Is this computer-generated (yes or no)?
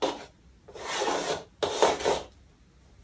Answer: no